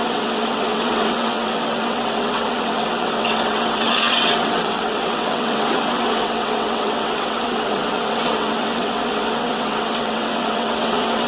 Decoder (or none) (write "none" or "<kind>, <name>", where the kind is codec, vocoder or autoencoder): vocoder, WaveNeXt